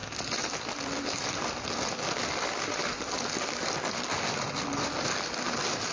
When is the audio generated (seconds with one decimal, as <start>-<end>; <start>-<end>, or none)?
none